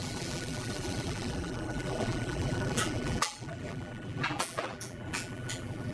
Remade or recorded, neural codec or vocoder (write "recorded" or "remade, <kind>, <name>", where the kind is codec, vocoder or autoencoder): remade, vocoder, BigVGAN v2